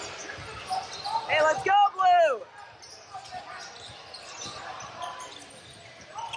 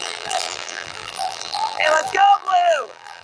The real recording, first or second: first